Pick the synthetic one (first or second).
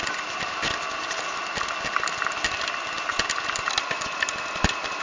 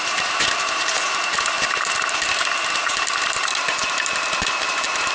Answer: second